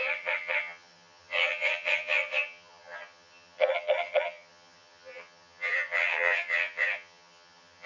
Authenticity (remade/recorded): remade